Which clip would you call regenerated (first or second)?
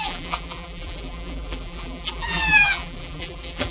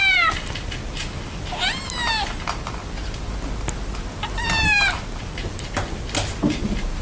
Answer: first